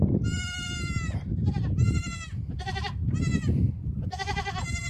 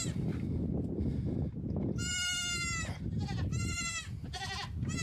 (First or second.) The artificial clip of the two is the first